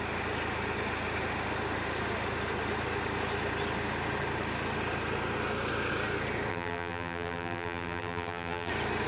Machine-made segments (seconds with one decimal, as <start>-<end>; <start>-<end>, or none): 6.5-8.7